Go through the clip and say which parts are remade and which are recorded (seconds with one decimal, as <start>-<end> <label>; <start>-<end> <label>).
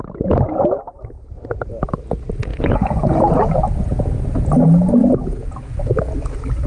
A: 0.0-2.5 recorded; 2.5-3.5 remade; 3.5-5.0 recorded; 5.0-5.9 remade; 5.9-6.7 recorded